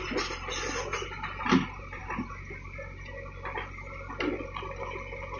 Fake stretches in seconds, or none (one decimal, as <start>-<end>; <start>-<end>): none